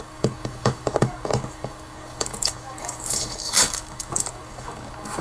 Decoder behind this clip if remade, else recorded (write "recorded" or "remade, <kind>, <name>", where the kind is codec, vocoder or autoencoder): remade, codec, DAC